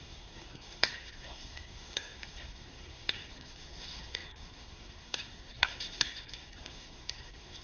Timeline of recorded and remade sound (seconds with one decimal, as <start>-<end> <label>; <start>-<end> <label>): 0.0-7.6 remade